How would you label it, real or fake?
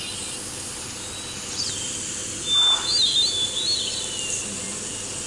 real